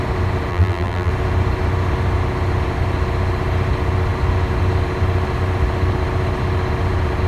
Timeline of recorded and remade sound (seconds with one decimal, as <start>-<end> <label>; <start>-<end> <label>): 0.0-0.5 recorded; 0.5-1.1 remade; 1.1-7.3 recorded